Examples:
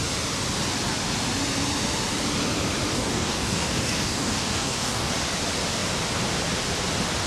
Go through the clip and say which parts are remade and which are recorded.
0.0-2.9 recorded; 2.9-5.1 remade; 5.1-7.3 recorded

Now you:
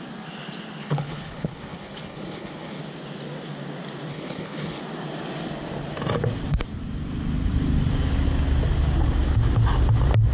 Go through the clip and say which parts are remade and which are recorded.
0.0-0.8 recorded; 0.8-2.8 remade; 2.8-4.1 recorded; 4.1-4.8 remade; 4.8-10.3 recorded

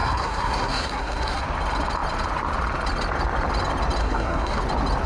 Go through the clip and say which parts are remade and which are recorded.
0.0-1.4 remade; 1.4-4.0 recorded; 4.0-4.6 remade; 4.6-5.1 recorded

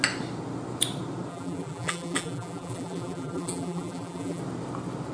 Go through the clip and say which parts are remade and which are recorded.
0.0-1.3 recorded; 1.3-4.4 remade; 4.4-5.1 recorded

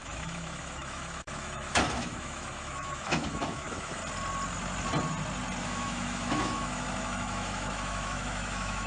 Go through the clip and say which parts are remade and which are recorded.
0.0-4.0 remade; 4.0-5.6 recorded; 5.6-8.9 remade

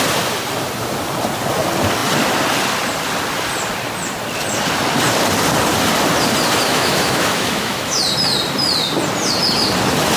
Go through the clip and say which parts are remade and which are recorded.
0.0-6.7 recorded; 6.7-8.0 remade; 8.0-10.2 recorded